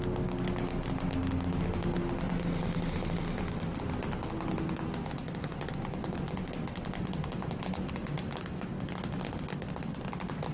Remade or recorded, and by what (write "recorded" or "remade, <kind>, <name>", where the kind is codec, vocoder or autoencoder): recorded